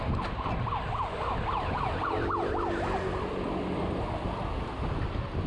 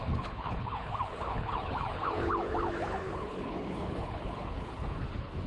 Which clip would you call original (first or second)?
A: first